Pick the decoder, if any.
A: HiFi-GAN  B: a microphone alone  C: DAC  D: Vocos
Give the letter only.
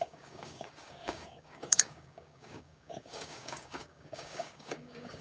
C